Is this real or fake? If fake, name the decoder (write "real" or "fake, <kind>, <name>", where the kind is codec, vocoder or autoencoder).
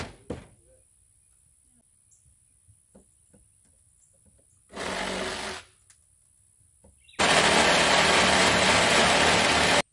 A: real